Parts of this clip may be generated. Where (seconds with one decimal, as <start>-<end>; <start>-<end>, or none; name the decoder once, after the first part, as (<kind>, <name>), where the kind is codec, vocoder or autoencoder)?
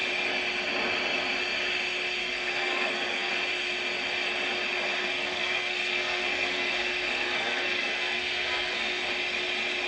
2.2-3.3 (codec, SNAC); 5.0-9.1